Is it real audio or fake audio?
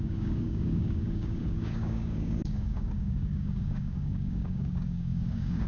fake